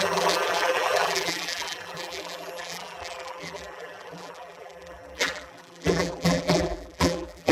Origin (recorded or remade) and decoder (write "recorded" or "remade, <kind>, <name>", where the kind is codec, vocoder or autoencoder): remade, vocoder, BigVGAN v2